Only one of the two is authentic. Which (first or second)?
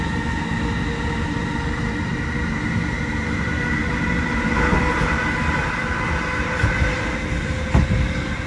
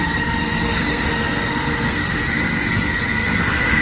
first